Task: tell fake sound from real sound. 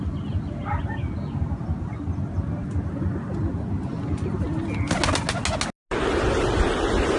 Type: real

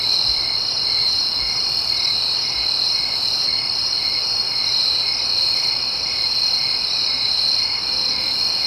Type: fake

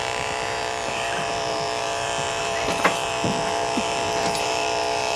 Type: fake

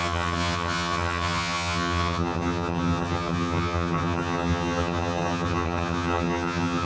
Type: fake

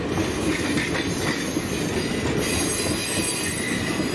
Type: real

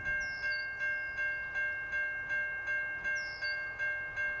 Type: real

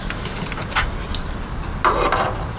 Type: real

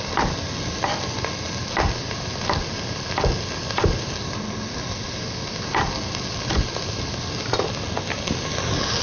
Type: real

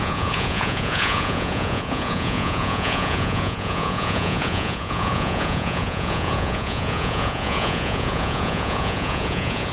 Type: fake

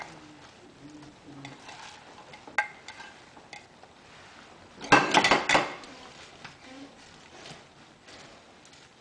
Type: real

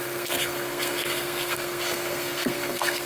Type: fake